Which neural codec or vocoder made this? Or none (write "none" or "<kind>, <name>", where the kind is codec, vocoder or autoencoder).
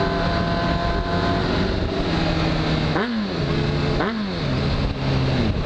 none